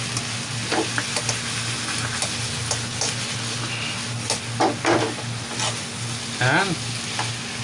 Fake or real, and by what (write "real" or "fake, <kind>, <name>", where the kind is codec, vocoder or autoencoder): real